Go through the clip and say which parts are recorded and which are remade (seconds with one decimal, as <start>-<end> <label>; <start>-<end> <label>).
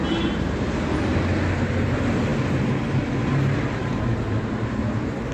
0.0-5.3 recorded